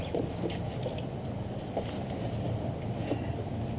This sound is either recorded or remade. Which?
recorded